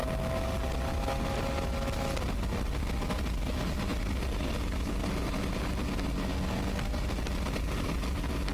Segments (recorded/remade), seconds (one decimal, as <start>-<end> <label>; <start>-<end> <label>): 0.0-8.5 recorded